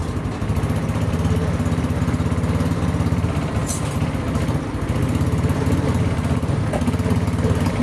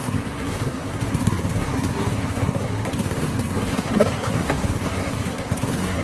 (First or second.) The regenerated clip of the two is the second